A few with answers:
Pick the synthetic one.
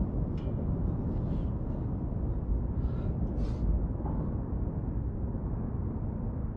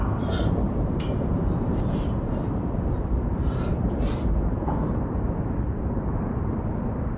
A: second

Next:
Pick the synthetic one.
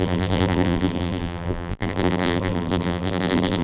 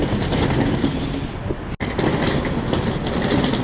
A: first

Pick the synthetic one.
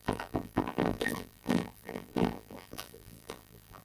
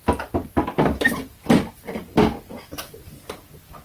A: first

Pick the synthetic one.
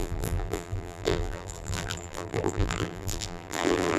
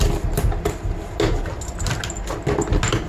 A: first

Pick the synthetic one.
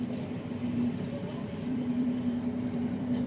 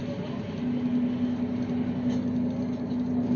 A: first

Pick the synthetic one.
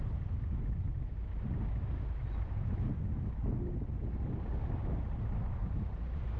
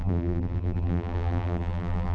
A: second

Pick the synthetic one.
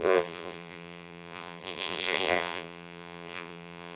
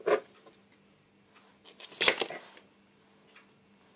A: first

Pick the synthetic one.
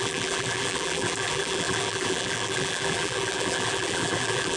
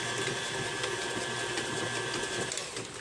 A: first